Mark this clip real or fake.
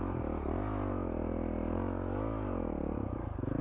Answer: real